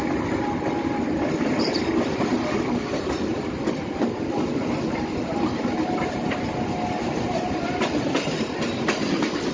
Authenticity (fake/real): real